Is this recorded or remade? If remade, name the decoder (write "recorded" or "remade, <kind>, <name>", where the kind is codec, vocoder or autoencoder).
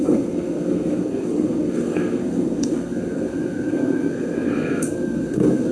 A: remade, codec, SNAC